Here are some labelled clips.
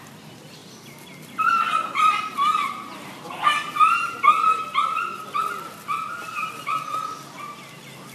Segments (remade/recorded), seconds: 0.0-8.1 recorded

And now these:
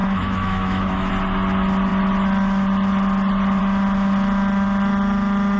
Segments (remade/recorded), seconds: 0.0-1.1 remade; 1.1-5.6 recorded

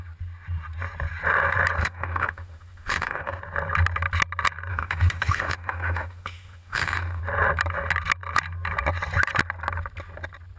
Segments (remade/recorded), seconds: 0.0-1.8 recorded; 1.8-3.4 remade; 3.4-4.7 recorded; 4.7-7.2 remade; 7.2-10.6 recorded